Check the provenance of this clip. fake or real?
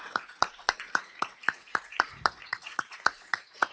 fake